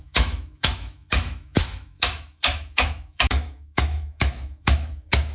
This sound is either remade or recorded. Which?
remade